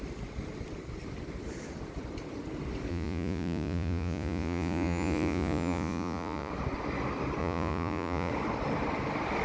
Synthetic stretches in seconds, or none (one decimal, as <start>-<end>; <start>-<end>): 2.9-6.5; 7.4-8.3